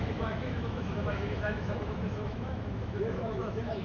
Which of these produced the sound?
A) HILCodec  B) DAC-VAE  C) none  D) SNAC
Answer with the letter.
B